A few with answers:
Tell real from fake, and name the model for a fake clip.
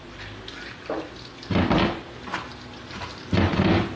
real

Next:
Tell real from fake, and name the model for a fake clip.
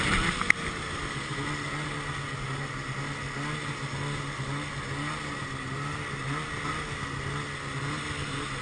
real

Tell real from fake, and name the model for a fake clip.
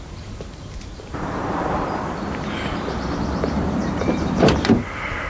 fake, vocoder, BigVGAN v2